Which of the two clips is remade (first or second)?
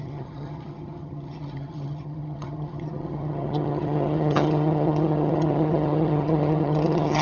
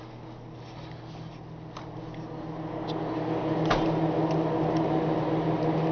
first